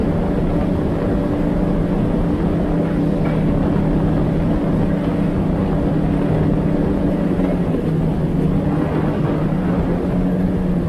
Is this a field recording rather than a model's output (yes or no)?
yes